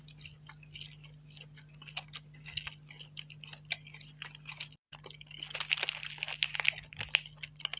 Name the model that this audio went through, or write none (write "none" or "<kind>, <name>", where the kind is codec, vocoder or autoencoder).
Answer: none